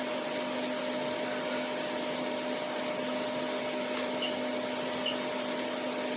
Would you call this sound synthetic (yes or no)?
no